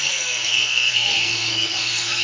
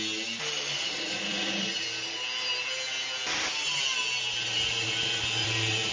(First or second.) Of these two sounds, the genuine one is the second